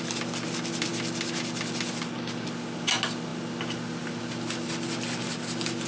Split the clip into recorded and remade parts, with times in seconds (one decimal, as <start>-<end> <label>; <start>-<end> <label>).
0.0-5.9 recorded